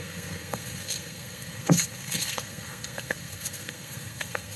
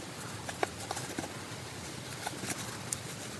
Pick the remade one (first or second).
first